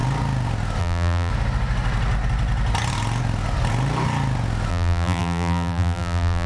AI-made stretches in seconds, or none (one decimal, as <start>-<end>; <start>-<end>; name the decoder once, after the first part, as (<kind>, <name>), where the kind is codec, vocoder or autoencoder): 0.8-1.3 (vocoder, BigVGAN v2); 4.7-6.5